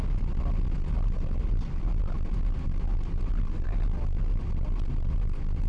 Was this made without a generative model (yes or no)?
yes